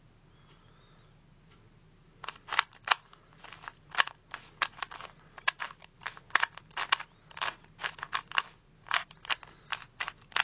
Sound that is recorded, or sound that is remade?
recorded